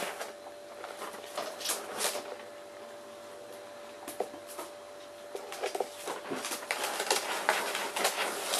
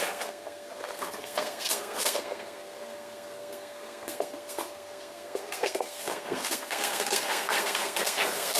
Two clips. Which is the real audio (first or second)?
first